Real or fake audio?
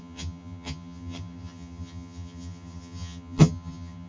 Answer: fake